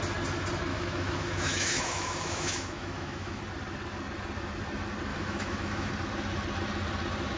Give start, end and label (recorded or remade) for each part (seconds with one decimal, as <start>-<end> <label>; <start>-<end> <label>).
0.0-0.7 recorded; 0.7-3.4 remade; 3.4-5.1 recorded; 5.1-5.9 remade; 5.9-7.4 recorded